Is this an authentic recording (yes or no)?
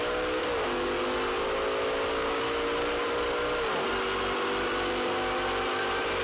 yes